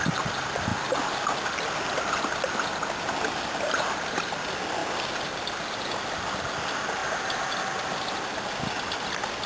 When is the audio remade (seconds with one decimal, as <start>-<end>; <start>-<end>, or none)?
none